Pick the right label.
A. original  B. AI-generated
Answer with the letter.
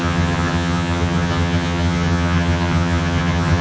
B